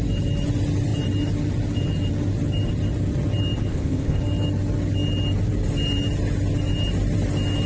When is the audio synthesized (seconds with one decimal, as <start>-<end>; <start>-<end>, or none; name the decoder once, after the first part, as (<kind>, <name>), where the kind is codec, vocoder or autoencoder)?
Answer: 3.7-4.2 (codec, ZipCodec)

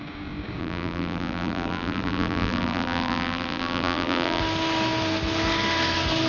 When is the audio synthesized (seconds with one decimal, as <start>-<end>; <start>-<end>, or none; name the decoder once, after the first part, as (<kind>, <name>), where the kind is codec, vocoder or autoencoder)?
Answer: 0.6-4.4 (vocoder, BigVGAN v2)

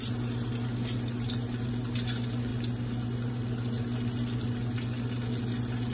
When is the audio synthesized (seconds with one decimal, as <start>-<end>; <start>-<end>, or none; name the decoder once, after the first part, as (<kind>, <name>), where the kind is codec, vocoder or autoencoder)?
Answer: none

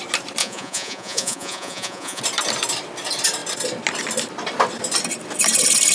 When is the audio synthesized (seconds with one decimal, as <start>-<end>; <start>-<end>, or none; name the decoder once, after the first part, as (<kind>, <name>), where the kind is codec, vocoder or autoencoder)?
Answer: 0.4-2.2 (vocoder, Vocos)

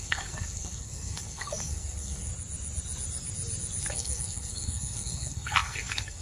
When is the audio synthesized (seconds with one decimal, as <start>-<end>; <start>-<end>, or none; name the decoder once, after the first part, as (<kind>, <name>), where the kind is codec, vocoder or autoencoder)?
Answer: 0.0-2.3 (codec, SNAC); 3.8-6.2

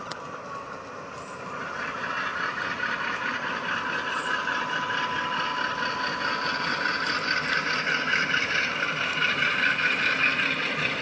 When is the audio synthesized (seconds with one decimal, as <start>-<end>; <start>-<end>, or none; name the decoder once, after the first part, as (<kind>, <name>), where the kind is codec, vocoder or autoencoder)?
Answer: none

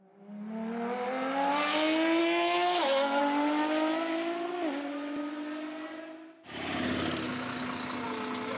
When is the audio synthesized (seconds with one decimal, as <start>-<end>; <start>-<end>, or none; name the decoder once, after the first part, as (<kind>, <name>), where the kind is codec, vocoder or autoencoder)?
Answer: 2.2-3.2 (autoencoder, DAC-VAE)

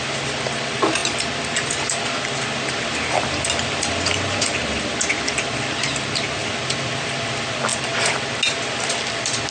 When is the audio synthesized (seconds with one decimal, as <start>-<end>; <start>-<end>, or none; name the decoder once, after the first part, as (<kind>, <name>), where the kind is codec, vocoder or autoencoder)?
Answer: none